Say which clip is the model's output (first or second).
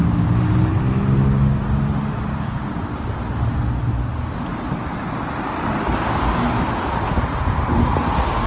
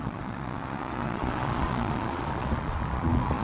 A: second